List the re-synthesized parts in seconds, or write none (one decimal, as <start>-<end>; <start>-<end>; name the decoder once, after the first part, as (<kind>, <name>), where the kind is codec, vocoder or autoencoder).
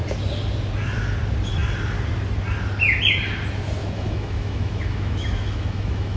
3.8-6.2 (autoencoder, DAC-VAE)